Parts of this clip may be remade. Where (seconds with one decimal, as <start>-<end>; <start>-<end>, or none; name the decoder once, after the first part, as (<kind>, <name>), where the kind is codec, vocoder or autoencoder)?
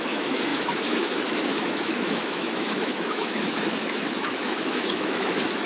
0.0-5.7 (autoencoder, DAC-VAE)